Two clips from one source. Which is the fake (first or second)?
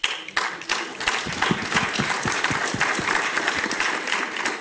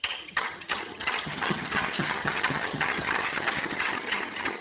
second